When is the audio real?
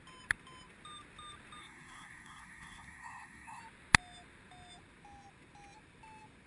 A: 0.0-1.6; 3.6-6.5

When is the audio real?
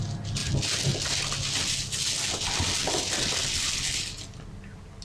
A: 0.0-5.0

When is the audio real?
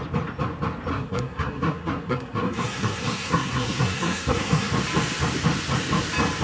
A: 0.0-0.9; 4.7-6.4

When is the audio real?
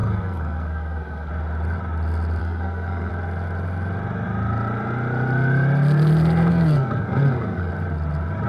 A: 1.3-2.4; 3.1-6.5; 7.7-8.5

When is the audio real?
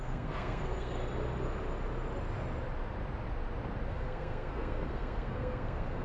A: 1.0-3.9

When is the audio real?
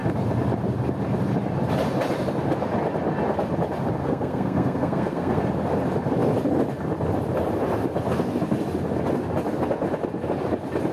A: 0.0-4.0; 5.4-10.9